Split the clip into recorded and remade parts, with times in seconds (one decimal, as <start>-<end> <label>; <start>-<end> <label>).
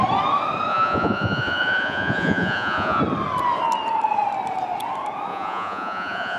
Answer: 0.0-0.7 recorded; 0.7-3.0 remade; 3.0-5.3 recorded; 5.3-6.4 remade